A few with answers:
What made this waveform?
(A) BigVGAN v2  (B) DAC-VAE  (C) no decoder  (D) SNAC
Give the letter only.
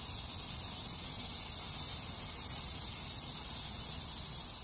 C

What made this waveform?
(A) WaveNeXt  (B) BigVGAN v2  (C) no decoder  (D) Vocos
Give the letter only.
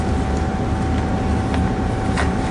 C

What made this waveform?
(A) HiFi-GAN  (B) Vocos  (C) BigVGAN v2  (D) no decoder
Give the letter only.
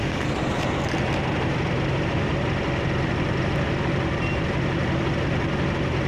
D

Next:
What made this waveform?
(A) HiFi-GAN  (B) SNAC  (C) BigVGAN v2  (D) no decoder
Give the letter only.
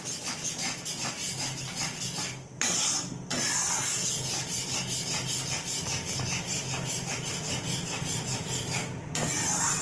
D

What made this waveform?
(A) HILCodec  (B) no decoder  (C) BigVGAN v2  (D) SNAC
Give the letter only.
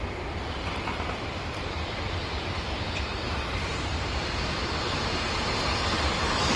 C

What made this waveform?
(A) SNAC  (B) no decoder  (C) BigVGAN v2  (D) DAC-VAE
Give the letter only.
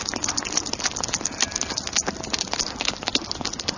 B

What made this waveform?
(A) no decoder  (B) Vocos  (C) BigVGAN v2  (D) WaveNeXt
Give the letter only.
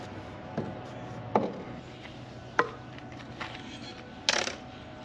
A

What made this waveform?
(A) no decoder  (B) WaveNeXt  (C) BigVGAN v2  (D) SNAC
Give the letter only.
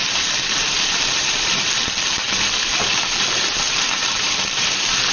C